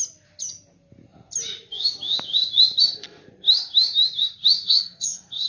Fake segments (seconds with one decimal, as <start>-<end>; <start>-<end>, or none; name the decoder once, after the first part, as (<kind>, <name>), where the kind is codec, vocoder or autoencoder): 4.6-5.5 (codec, SNAC)